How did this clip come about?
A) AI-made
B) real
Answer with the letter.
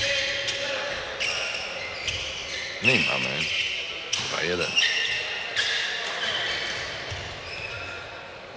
B